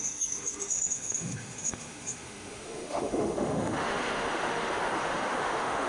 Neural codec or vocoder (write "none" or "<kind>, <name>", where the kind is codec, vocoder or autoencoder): autoencoder, DAC-VAE